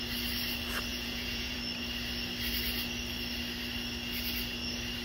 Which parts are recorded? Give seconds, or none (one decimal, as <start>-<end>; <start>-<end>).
0.0-0.9; 1.6-5.0